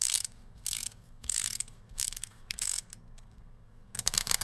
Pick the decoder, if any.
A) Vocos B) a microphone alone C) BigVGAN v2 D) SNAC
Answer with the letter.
D